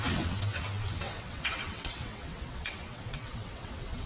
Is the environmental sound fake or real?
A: fake